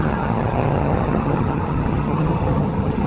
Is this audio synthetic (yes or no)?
yes